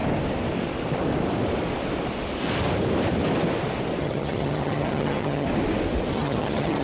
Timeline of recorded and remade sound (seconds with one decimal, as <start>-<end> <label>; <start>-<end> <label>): 0.0-4.0 recorded; 4.0-5.5 remade; 5.5-6.1 recorded; 6.1-6.8 remade